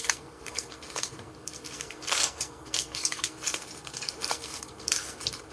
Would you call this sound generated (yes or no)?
yes